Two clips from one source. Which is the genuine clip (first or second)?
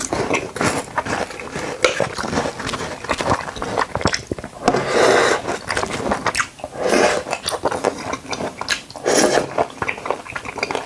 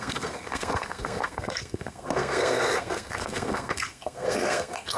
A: first